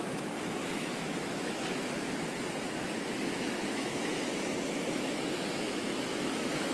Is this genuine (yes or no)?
no